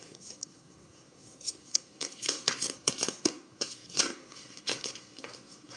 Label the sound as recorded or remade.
remade